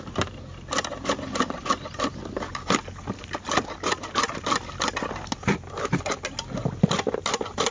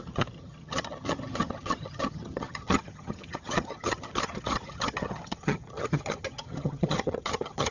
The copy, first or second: second